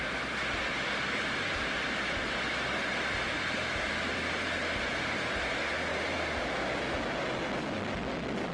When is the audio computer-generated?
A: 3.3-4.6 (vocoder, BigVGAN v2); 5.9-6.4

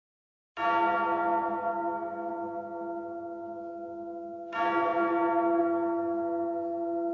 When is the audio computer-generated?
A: 1.7-2.3 (codec, DAC)

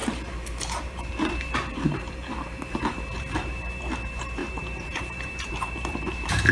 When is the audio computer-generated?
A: 0.0-6.5 (vocoder, BigVGAN v2)